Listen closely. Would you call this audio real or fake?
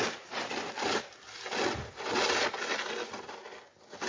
real